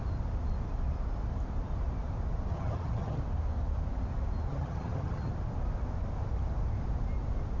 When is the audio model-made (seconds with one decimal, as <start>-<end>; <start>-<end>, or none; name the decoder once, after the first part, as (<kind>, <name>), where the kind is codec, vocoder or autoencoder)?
2.5-3.2 (vocoder, HiFi-GAN); 4.5-5.3